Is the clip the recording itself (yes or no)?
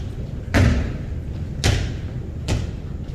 yes